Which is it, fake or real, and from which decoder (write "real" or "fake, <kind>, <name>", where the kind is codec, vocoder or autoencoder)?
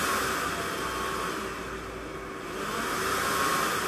real